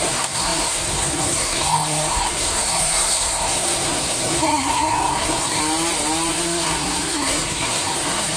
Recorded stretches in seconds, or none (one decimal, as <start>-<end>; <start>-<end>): 5.6-6.3